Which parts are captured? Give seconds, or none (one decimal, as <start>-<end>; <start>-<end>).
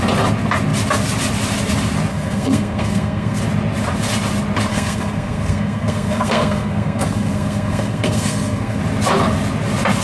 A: 0.0-2.1; 3.4-4.7; 8.8-10.0